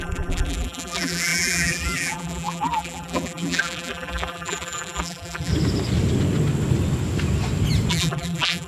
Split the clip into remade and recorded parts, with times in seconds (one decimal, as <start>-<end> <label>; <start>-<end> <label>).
0.0-5.5 remade; 5.5-7.9 recorded; 7.9-8.7 remade